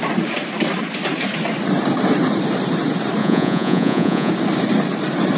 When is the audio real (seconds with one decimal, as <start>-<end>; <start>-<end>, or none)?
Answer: 0.0-3.2; 4.3-5.4

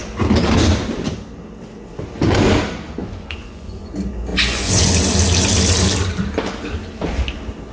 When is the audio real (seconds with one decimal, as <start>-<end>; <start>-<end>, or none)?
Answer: 0.0-3.0; 3.9-4.3; 4.9-7.7

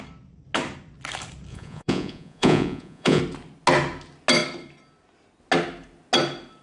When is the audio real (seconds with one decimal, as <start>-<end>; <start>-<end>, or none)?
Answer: 0.0-1.5; 3.2-6.6

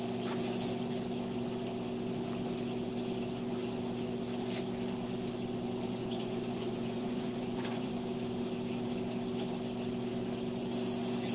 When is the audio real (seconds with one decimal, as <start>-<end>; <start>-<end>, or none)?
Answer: 0.0-6.0; 7.9-11.3

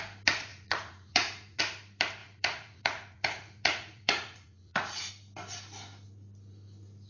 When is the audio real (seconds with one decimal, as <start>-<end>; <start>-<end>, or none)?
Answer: 0.0-0.5; 1.6-2.2; 5.1-7.1

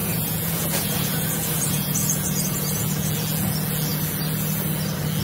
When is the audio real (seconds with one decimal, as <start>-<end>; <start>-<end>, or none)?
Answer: 3.1-5.2